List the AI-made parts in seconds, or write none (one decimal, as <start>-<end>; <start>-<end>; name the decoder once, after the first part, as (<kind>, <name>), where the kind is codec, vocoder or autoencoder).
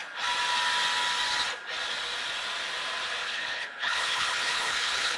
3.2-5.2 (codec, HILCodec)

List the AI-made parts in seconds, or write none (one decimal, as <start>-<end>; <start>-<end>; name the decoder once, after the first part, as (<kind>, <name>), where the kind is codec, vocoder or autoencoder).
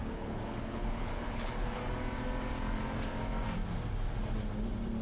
0.0-1.8 (codec, HILCodec)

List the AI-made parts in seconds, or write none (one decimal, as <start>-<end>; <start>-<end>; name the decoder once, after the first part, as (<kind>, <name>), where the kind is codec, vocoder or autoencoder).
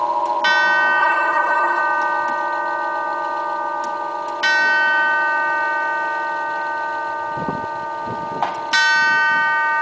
1.0-1.8 (codec, HILCodec)